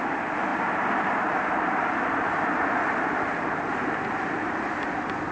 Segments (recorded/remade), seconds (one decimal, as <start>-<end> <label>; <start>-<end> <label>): 0.0-5.3 recorded

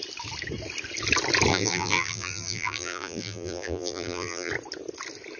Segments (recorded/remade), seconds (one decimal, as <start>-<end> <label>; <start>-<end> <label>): 0.0-1.5 recorded; 1.5-4.5 remade; 4.5-5.4 recorded

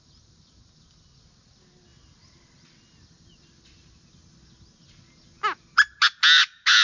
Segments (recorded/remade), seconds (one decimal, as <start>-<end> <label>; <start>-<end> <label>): 0.0-6.8 recorded

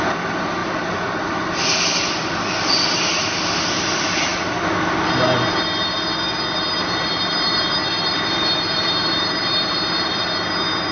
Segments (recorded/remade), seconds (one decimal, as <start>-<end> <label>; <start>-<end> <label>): 0.0-6.8 recorded; 6.8-10.1 remade; 10.1-10.9 recorded

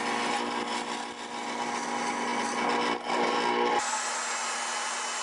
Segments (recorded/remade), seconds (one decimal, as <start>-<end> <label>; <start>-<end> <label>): 0.0-5.2 recorded

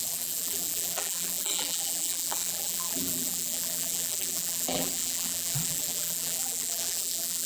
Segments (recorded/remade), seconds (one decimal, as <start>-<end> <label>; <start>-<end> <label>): 0.0-7.5 remade